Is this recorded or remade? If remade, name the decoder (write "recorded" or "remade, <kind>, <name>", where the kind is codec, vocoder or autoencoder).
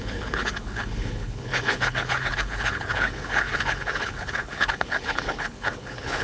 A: remade, codec, HILCodec